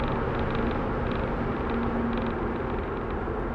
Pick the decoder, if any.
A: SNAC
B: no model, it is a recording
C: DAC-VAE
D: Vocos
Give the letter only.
B